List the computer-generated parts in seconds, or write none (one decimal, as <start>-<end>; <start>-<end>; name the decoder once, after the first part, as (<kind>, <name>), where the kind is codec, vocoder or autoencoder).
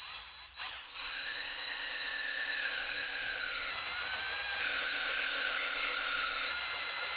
0.8-3.7 (codec, ZipCodec); 4.6-6.5